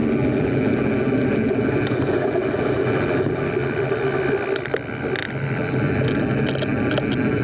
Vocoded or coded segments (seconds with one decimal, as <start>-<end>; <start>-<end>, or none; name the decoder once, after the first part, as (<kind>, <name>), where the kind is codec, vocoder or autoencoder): none